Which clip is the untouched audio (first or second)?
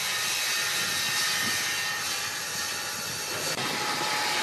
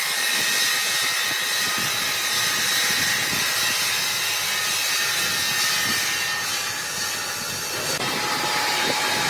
second